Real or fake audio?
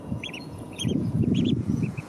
fake